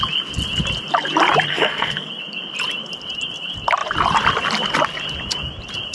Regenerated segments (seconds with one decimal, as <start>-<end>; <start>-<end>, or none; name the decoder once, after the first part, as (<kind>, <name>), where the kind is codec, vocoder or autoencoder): 1.5-2.1 (codec, SNAC)